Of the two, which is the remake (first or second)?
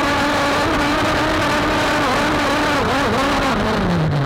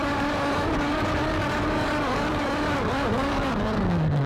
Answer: second